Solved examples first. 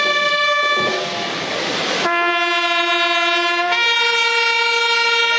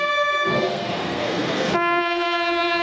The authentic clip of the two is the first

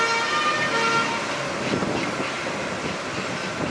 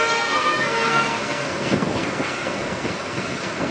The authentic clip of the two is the first